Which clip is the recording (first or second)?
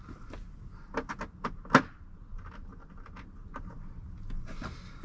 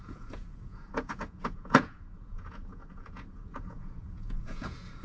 first